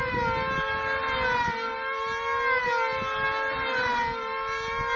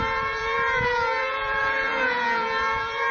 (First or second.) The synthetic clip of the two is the second